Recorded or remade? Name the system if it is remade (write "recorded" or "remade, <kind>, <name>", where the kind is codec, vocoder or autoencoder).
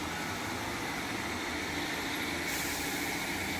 recorded